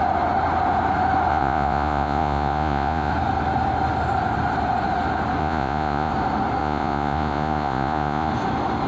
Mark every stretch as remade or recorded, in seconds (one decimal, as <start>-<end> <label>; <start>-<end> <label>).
0.0-1.3 recorded; 1.3-3.1 remade; 3.1-5.4 recorded; 5.4-6.1 remade; 6.1-6.6 recorded; 6.6-8.3 remade; 8.3-8.9 recorded